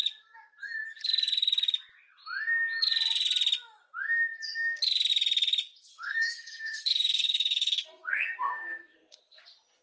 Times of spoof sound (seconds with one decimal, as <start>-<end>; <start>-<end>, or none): 5.9-9.4